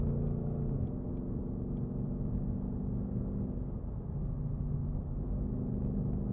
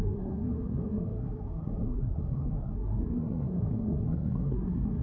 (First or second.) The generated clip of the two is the second